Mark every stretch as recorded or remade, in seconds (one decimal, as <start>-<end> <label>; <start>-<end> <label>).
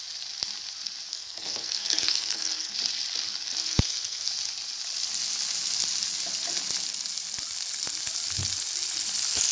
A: 0.0-1.1 recorded; 1.1-2.7 remade; 2.7-3.6 recorded; 3.6-4.3 remade; 4.3-9.5 recorded